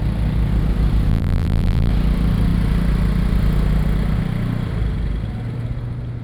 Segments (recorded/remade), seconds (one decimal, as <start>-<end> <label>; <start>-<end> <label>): 0.0-1.1 recorded; 1.1-1.9 remade; 1.9-6.2 recorded